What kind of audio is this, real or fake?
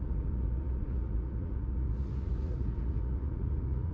fake